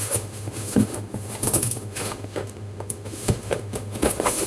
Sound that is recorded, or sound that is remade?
remade